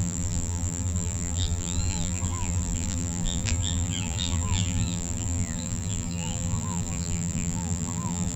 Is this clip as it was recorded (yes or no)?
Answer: no